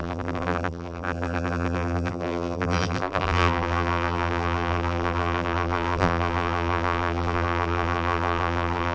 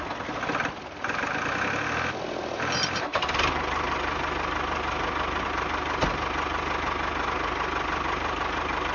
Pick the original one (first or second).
second